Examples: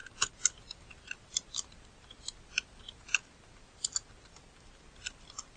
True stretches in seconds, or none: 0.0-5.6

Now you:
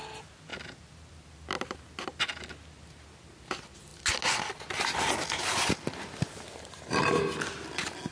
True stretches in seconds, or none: 0.0-8.1

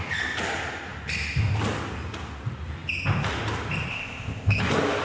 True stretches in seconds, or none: 0.0-3.9; 4.6-5.0

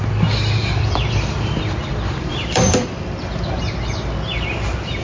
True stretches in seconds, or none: 0.0-0.6; 3.6-5.0

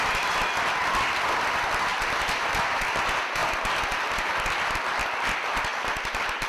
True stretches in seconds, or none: 0.0-1.9; 2.5-6.5